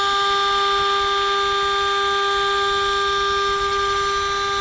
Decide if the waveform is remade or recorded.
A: recorded